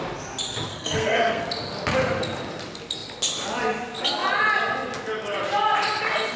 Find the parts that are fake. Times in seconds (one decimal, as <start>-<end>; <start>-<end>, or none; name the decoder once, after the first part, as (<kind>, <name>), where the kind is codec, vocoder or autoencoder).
0.7-1.4 (codec, SNAC)